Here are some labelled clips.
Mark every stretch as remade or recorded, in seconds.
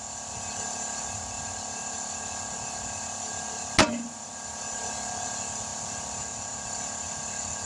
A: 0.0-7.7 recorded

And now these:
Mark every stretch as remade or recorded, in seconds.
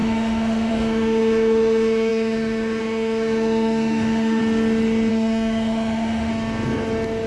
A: 0.0-4.4 remade; 4.4-5.1 recorded; 5.1-6.3 remade; 6.3-7.3 recorded